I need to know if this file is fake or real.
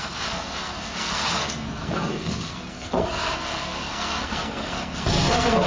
fake